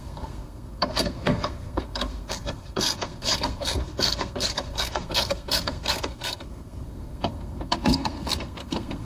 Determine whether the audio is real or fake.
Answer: fake